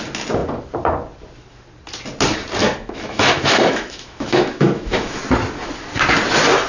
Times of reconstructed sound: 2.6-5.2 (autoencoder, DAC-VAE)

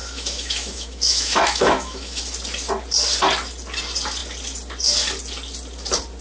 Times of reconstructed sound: 0.0-2.2 (autoencoder, DAC-VAE)

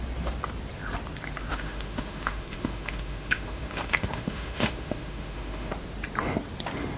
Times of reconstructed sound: 1.5-5.7 (autoencoder, DAC-VAE)